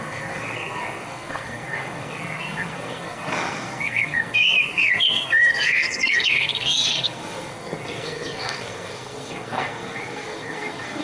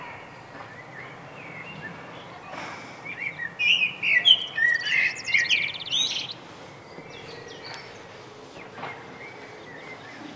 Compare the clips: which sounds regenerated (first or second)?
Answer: first